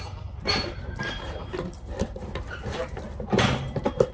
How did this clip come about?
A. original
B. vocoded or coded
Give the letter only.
A